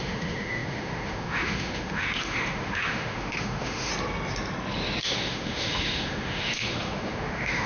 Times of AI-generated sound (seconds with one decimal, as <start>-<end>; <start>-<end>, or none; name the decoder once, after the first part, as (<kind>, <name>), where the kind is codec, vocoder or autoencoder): 0.0-3.9 (autoencoder, DAC-VAE); 5.0-7.7